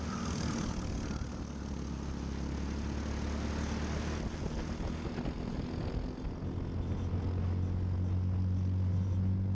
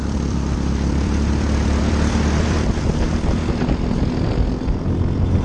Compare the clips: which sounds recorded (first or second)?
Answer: first